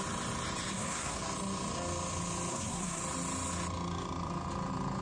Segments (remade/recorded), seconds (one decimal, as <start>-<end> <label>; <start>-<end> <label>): 0.0-0.7 recorded; 0.7-1.2 remade; 1.2-2.5 recorded; 2.5-3.0 remade; 3.0-5.0 recorded